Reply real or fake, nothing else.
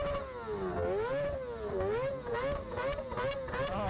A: real